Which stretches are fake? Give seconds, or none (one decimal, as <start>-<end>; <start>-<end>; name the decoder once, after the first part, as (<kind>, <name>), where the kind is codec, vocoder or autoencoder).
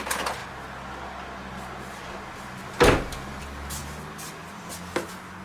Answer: none